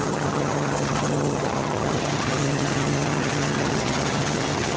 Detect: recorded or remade remade